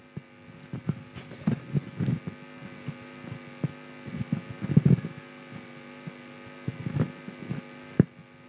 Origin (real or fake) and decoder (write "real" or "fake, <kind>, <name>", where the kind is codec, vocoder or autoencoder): real